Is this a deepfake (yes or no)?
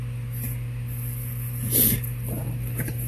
no